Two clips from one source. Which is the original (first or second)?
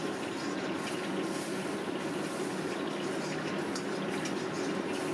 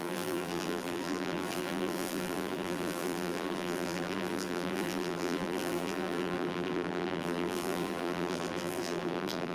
first